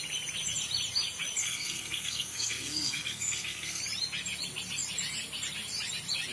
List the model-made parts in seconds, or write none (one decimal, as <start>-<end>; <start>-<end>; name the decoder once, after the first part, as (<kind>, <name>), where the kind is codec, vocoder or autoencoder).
1.4-3.8 (codec, SNAC)

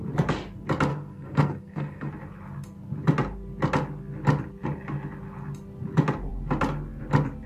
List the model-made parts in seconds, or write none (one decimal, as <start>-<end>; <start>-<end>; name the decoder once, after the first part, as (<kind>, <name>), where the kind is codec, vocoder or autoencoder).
0.9-2.1 (codec, SNAC)